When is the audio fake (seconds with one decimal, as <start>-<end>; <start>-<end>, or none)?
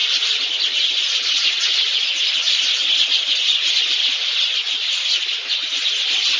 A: none